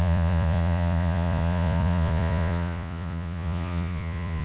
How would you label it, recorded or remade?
remade